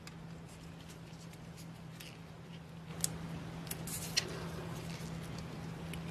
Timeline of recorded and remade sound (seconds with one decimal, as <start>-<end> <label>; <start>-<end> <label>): 0.0-6.1 recorded

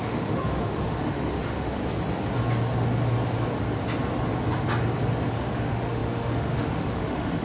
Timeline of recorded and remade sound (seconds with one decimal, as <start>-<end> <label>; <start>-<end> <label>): 0.0-1.8 remade; 1.8-5.3 recorded; 5.3-7.4 remade

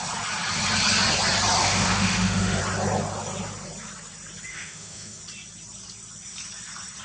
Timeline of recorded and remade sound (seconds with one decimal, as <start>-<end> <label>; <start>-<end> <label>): 0.0-1.6 recorded; 1.6-2.6 remade; 2.6-4.5 recorded; 4.5-5.2 remade; 5.2-7.0 recorded

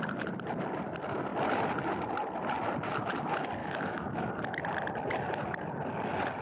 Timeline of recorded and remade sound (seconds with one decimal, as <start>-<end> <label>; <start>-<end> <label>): 0.0-3.6 recorded; 3.6-4.3 remade; 4.3-6.4 recorded

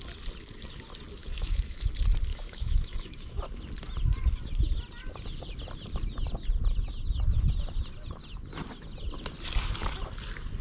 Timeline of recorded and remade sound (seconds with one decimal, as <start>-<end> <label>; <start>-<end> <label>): 0.0-1.2 recorded; 1.2-1.9 remade; 1.9-2.3 recorded; 2.3-3.4 remade; 3.4-10.6 recorded

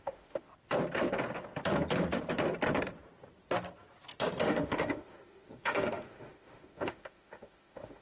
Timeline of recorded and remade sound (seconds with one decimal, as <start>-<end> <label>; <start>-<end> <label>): 0.0-0.5 remade; 0.5-4.4 recorded; 4.4-8.0 remade